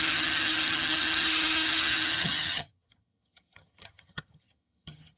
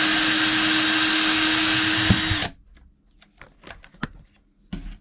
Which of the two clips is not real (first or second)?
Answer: first